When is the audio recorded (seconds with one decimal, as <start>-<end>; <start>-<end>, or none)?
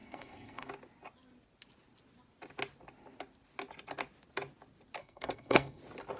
0.7-5.0; 5.8-6.2